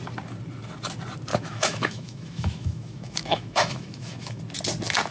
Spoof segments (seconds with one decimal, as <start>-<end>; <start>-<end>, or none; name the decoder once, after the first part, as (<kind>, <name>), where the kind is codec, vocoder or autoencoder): 1.3-4.4 (autoencoder, DAC-VAE)